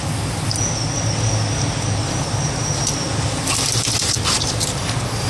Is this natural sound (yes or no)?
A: yes